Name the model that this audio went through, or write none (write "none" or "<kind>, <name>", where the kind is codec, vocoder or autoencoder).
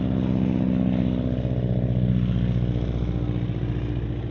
none